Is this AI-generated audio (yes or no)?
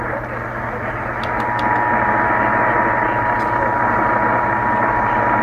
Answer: no